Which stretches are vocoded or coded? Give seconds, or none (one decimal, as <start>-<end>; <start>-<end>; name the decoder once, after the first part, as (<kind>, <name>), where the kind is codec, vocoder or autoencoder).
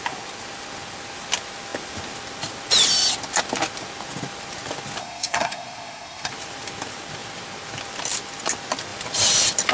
5.0-6.3 (codec, SNAC)